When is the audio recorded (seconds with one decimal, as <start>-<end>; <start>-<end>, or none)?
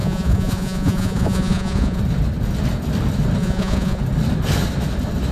2.0-3.4; 4.0-5.3